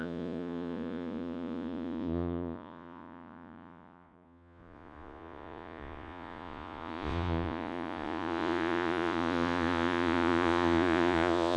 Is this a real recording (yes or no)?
no